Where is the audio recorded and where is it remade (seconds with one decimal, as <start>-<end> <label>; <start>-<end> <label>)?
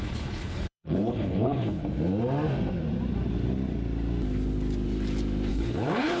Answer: 0.0-1.8 remade; 1.8-5.5 recorded; 5.5-6.2 remade